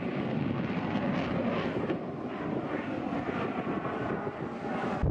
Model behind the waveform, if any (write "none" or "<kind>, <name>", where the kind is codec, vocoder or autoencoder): none